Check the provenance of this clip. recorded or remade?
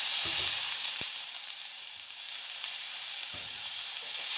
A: remade